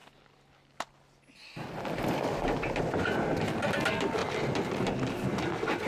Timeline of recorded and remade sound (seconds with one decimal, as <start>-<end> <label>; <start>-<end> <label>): 0.0-5.9 recorded